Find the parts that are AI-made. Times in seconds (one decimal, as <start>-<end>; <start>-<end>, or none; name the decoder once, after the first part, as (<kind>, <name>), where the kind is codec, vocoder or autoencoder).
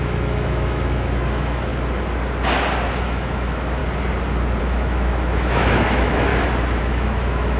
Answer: 0.0-1.7 (autoencoder, DAC-VAE); 3.0-3.8; 4.6-6.3; 6.8-7.6